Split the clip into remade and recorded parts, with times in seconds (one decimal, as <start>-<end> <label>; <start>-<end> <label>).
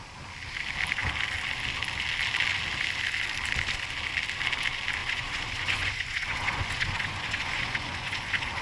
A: 0.0-5.0 recorded; 5.0-8.6 remade